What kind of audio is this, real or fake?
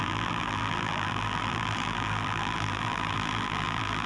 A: fake